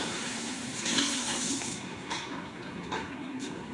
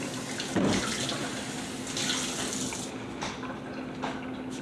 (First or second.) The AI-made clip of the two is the first